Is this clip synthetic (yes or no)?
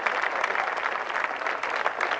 no